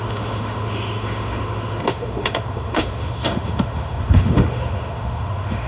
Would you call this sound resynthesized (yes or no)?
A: yes